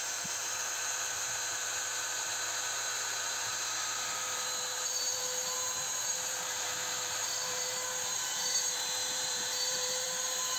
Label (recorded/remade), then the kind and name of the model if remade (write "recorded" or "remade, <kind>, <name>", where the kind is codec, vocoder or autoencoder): remade, vocoder, BigVGAN v2